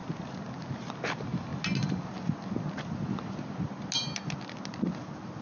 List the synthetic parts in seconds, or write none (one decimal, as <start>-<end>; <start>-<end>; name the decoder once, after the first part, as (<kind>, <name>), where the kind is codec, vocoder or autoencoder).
none